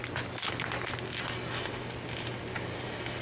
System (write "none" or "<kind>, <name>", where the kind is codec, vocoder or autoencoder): none